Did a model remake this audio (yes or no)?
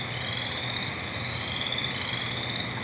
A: no